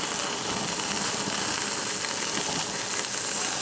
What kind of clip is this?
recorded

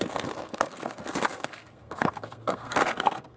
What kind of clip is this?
remade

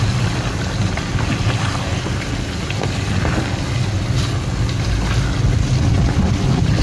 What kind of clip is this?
recorded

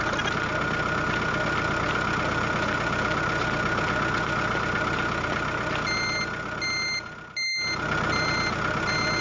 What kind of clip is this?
recorded